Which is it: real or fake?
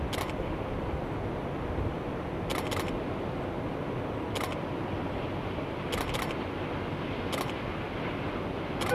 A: real